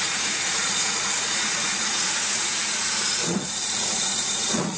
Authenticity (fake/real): fake